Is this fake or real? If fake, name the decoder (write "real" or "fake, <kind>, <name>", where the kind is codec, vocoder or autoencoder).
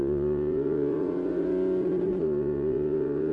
fake, vocoder, Vocos